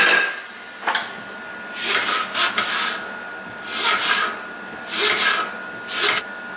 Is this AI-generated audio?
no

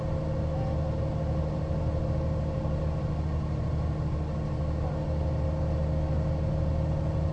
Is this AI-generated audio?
no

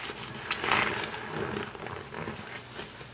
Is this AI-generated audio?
no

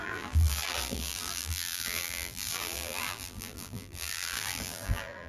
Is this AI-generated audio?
yes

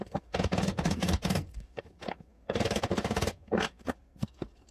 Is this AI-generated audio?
yes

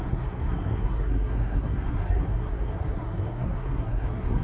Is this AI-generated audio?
yes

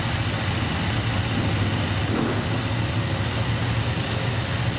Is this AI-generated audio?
no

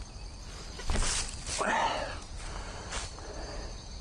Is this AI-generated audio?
no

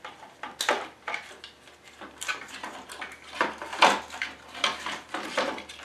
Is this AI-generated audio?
yes